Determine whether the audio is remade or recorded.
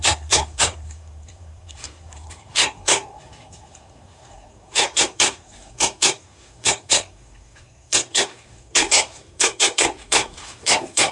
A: remade